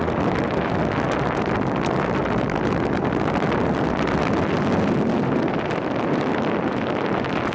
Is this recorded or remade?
recorded